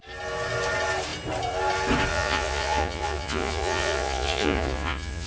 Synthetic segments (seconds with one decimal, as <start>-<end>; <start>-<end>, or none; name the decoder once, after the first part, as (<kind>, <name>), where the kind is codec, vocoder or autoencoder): 2.1-5.3 (vocoder, Vocos)